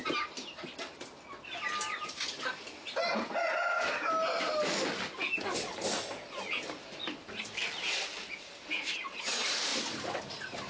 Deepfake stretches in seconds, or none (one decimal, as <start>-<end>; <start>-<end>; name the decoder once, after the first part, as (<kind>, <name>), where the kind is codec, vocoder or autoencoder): none